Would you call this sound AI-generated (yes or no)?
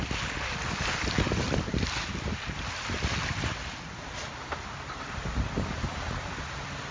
no